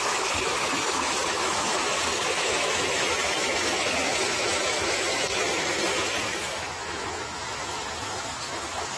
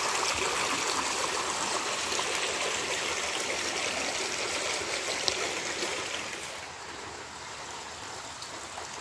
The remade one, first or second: first